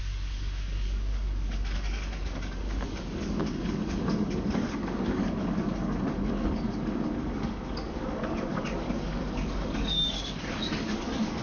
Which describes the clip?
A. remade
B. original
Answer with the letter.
A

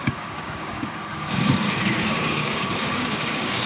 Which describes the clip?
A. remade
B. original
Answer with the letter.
A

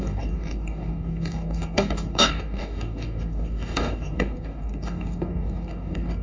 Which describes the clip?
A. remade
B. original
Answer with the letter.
A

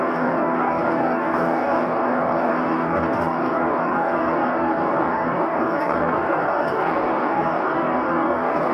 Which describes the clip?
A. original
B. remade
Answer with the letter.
B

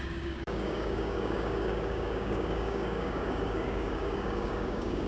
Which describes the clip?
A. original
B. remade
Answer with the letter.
B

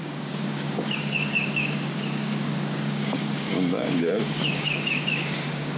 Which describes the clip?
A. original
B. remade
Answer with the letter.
B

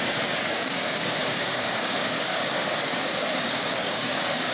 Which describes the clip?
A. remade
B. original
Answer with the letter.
A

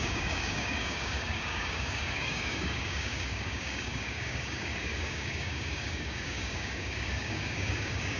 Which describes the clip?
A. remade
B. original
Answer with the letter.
A